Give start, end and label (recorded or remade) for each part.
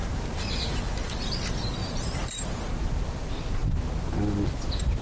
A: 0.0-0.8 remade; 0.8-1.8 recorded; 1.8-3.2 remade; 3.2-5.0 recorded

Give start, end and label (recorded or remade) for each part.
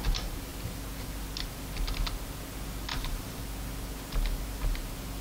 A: 0.0-2.9 recorded; 2.9-3.4 remade; 3.4-5.2 recorded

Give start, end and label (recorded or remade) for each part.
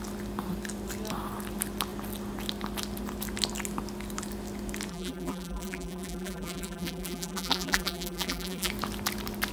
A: 0.0-4.9 recorded; 4.9-8.7 remade; 8.7-9.5 recorded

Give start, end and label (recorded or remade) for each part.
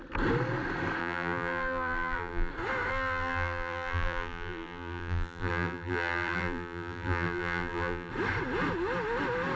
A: 0.0-1.0 recorded; 1.0-2.5 remade; 2.5-2.9 recorded; 2.9-8.1 remade; 8.1-9.6 recorded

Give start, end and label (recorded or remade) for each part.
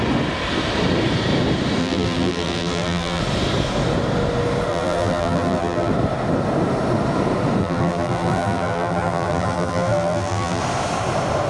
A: 0.0-1.8 recorded; 1.8-3.2 remade; 3.2-4.7 recorded; 4.7-5.9 remade; 5.9-7.6 recorded; 7.6-10.6 remade; 10.6-11.5 recorded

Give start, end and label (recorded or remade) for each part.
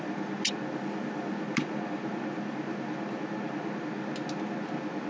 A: 0.0-5.1 recorded